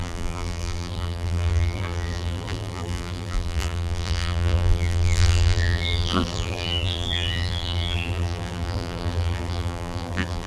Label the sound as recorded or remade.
remade